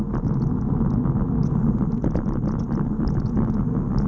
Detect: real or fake real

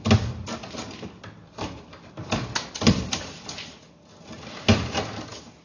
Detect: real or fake real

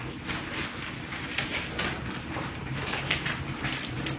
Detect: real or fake real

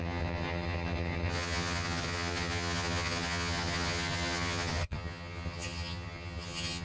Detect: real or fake fake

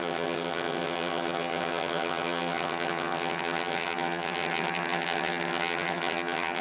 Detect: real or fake fake